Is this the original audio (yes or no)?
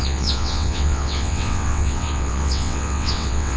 no